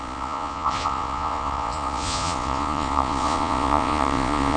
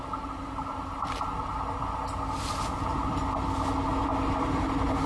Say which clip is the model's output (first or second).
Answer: first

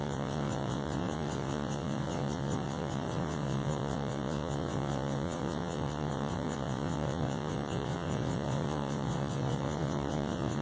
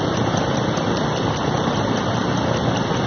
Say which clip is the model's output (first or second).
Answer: first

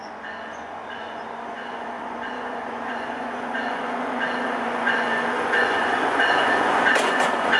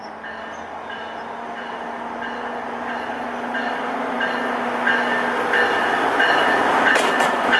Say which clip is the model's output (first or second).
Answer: first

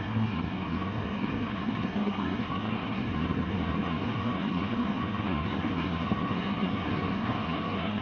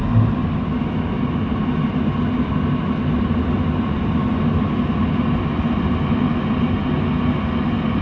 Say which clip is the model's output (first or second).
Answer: first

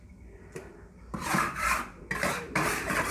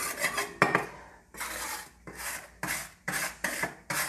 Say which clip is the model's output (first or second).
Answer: first